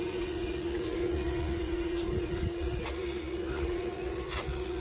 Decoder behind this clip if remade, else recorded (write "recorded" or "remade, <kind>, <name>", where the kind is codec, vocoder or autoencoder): remade, vocoder, Vocos